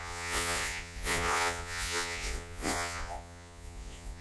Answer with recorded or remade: remade